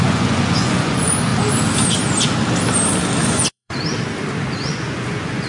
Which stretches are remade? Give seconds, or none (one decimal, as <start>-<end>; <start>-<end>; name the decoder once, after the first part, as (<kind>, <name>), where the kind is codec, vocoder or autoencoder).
0.0-1.3 (vocoder, Vocos); 3.2-3.7; 4.6-5.5